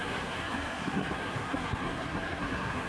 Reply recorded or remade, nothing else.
remade